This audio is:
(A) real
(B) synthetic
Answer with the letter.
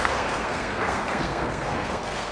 B